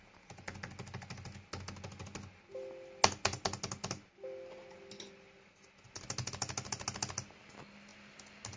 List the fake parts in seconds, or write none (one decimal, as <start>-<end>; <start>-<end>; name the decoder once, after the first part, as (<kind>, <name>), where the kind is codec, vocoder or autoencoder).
none